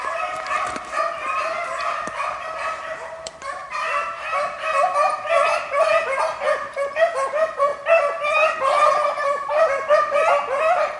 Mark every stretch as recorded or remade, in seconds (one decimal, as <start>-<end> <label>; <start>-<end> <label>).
0.0-3.6 remade; 3.6-6.9 recorded; 6.9-7.7 remade; 7.7-9.2 recorded; 9.2-11.0 remade